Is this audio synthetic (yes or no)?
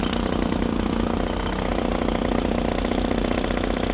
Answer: no